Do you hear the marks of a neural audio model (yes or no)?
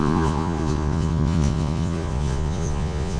yes